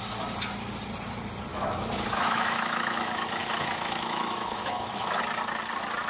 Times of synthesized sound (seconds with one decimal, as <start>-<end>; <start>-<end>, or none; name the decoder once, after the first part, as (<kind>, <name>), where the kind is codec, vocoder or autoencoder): 1.5-5.2 (autoencoder, DAC-VAE)